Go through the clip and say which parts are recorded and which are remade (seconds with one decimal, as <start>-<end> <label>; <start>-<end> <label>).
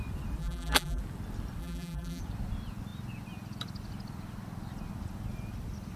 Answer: 0.0-0.4 recorded; 0.4-1.0 remade; 1.0-1.6 recorded; 1.6-2.2 remade; 2.2-6.0 recorded